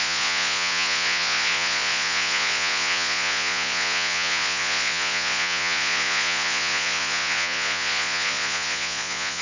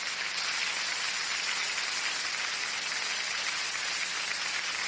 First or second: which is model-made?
first